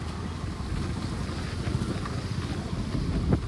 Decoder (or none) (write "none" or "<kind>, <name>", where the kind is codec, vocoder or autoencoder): none